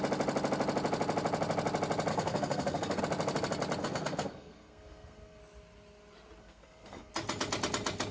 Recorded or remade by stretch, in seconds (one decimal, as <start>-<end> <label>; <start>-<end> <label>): 0.0-2.1 recorded; 2.1-3.0 remade; 3.0-3.8 recorded; 3.8-5.4 remade; 5.4-6.4 recorded; 6.4-7.1 remade; 7.1-8.1 recorded